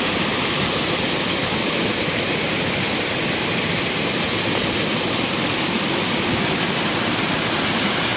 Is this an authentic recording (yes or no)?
yes